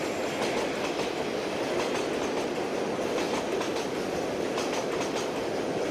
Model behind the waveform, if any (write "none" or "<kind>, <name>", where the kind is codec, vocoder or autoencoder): none